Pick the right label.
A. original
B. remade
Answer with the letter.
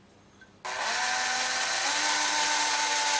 A